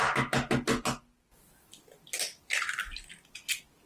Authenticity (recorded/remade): recorded